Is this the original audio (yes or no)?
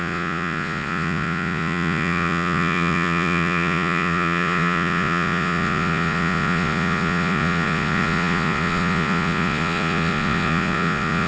no